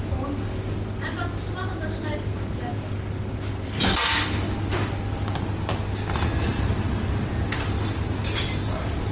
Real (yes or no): yes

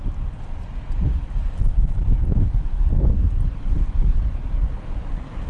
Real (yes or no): yes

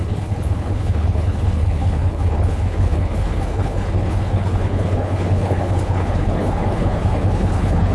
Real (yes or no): no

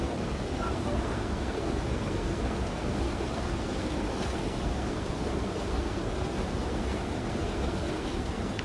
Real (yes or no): no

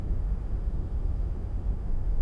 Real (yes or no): no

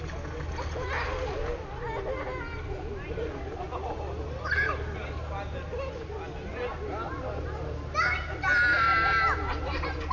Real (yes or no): yes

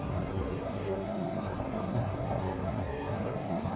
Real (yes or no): no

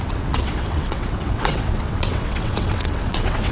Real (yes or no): no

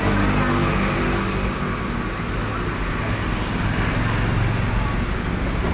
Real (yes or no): yes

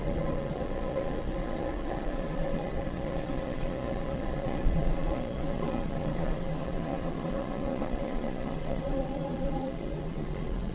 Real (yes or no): no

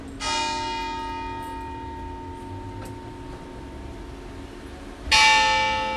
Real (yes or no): yes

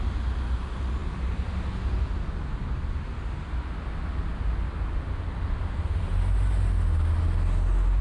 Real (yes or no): yes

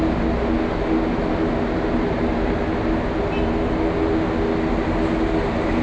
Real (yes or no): yes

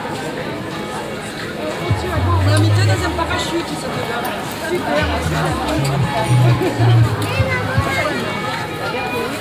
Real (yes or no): yes